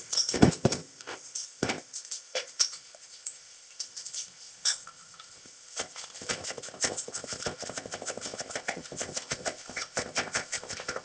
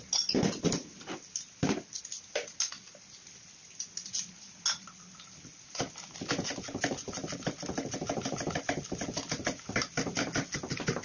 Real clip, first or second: second